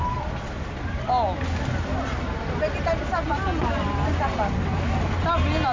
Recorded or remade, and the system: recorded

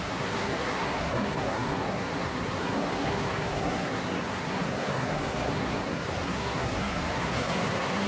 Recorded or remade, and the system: remade, codec, SNAC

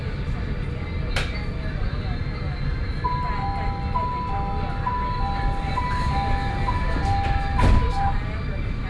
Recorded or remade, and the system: recorded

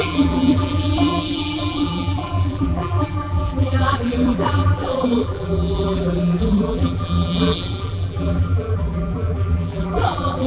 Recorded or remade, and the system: remade, vocoder, BigVGAN v2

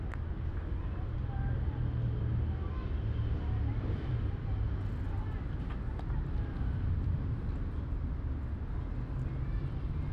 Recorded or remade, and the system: recorded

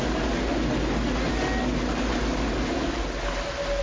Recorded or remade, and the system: recorded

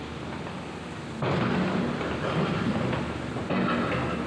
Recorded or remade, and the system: recorded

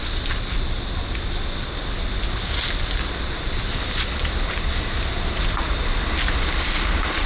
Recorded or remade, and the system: recorded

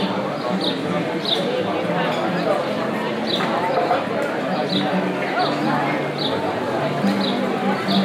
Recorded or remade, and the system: recorded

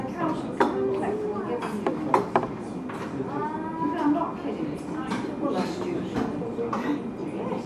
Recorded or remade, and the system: recorded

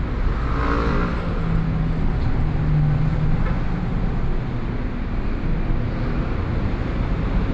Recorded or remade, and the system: recorded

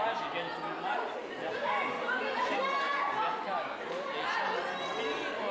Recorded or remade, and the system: recorded